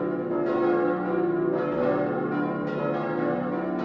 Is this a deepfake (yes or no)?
no